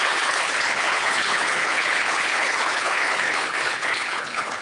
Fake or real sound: fake